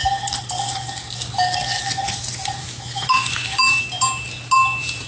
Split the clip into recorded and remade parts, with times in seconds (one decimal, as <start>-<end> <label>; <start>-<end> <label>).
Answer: 0.0-2.6 recorded; 2.6-3.8 remade; 3.8-5.1 recorded